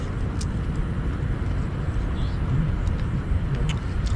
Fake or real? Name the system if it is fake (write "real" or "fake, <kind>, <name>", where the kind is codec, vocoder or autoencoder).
real